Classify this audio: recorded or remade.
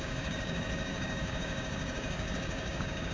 remade